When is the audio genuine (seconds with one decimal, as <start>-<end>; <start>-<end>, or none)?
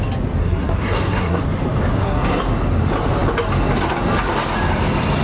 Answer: 0.0-0.4; 1.4-1.9; 2.4-5.2